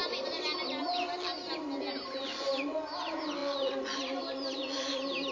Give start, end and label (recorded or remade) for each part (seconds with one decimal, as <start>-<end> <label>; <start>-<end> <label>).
0.0-5.3 recorded